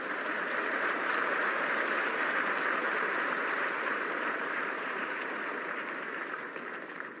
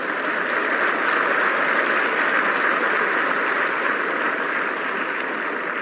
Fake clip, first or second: first